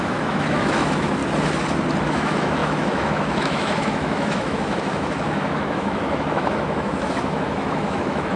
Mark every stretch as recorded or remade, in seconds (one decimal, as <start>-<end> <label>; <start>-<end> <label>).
0.0-1.2 remade; 1.2-2.0 recorded; 2.0-8.4 remade